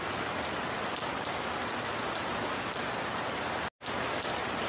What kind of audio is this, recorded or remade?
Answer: recorded